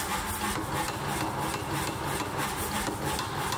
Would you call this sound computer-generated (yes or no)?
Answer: no